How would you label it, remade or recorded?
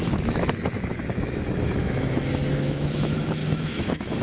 remade